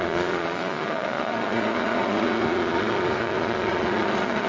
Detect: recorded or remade remade